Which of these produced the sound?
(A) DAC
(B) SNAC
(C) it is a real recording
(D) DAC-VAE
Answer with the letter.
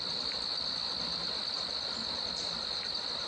C